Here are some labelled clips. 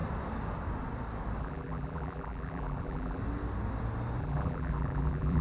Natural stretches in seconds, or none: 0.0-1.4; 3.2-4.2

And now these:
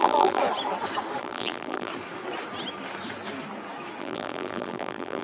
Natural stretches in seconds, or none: 0.4-1.2; 1.9-4.0

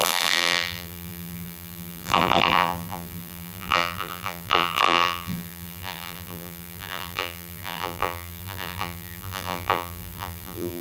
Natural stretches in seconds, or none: none

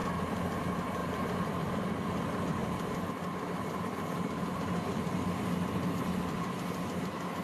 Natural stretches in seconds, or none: 0.0-1.0; 1.9-2.6; 3.1-7.4

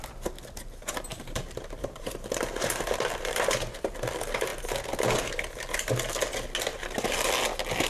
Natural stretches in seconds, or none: 0.0-1.1; 3.5-6.7; 7.3-7.9